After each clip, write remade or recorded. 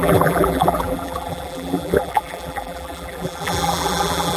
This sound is remade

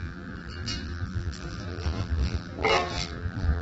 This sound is remade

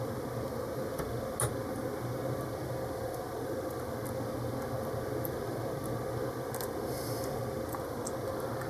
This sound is recorded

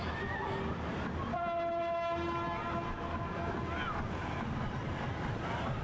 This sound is recorded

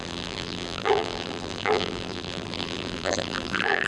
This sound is remade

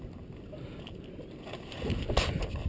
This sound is recorded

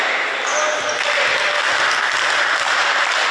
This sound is recorded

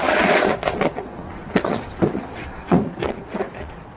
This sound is remade